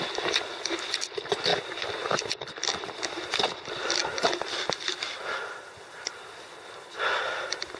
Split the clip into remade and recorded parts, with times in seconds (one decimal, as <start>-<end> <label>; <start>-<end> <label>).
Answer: 0.0-4.0 recorded; 4.0-4.8 remade; 4.8-7.8 recorded